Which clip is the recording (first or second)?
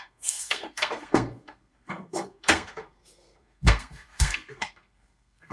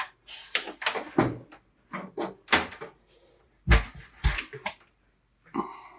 second